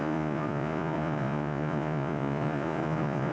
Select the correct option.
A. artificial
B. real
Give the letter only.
A